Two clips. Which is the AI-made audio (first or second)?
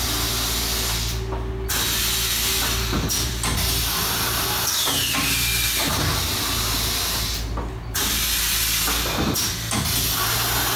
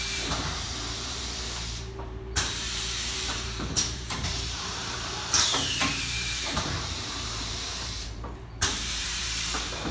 second